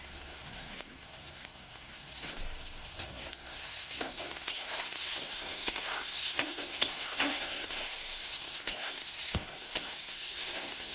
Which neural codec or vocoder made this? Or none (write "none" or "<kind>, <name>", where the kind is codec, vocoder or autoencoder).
codec, SNAC